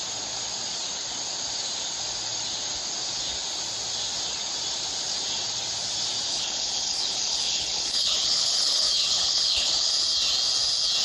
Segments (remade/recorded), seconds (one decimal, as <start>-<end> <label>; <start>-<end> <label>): 0.0-6.3 recorded; 6.3-9.9 remade; 9.9-11.0 recorded

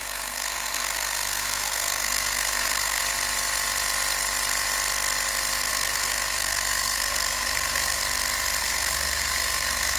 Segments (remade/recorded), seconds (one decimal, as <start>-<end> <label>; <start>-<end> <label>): 0.0-3.0 remade; 3.0-5.7 recorded; 5.7-8.0 remade; 8.0-8.6 recorded; 8.6-10.0 remade

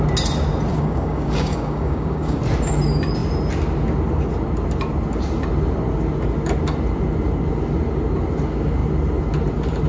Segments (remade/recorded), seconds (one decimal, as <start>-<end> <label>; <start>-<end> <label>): 0.0-0.7 recorded; 0.7-2.4 remade; 2.4-9.9 recorded